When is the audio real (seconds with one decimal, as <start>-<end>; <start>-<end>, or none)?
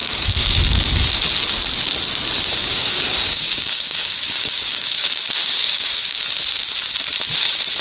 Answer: 0.8-2.6; 6.2-7.8